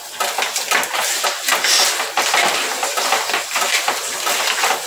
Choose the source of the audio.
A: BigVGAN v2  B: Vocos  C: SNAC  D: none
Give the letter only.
D